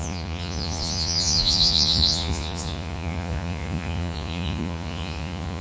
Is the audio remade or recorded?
remade